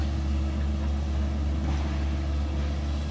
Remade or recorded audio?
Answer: recorded